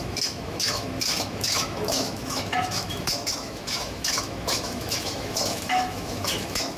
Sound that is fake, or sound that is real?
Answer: fake